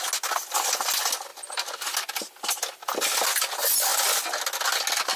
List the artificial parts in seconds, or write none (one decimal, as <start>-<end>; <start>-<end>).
none